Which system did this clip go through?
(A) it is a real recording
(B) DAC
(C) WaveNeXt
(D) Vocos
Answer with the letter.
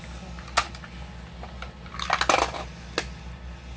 A